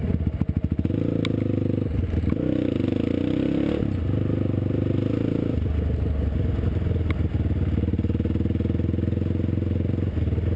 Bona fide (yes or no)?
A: yes